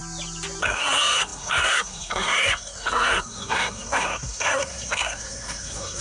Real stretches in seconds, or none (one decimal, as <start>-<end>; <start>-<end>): 0.0-0.6